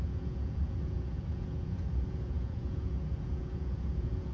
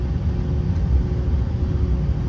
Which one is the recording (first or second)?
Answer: second